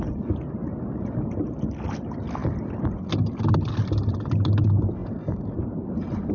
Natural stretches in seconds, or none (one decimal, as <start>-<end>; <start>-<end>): 0.0-5.0